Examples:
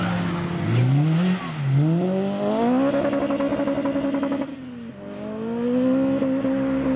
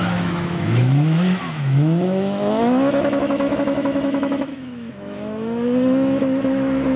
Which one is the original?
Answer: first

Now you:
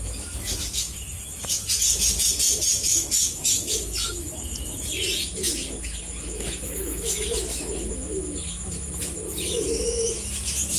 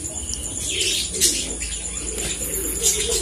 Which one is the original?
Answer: second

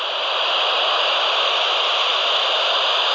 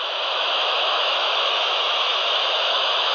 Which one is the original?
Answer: first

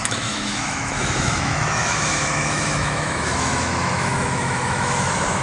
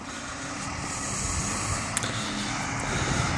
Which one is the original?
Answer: second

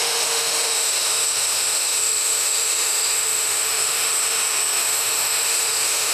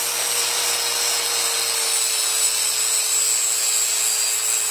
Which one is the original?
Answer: second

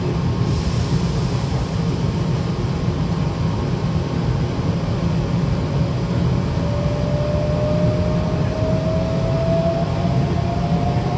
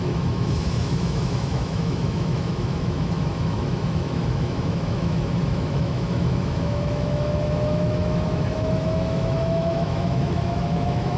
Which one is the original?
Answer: first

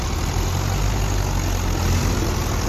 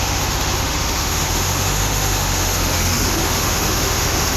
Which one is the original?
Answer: first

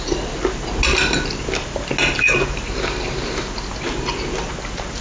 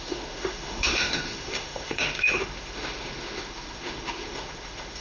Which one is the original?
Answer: first